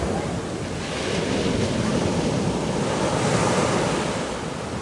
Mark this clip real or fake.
real